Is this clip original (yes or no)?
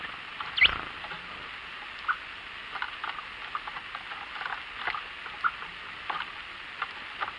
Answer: yes